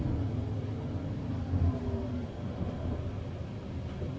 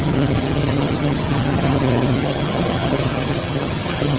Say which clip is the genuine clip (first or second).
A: first